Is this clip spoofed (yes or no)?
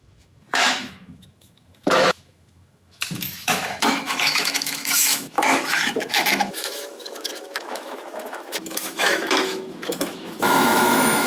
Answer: yes